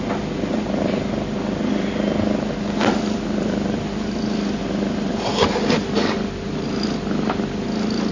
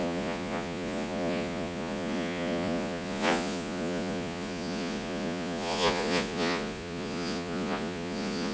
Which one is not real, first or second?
second